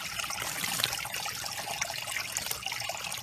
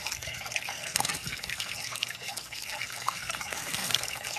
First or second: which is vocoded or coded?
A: second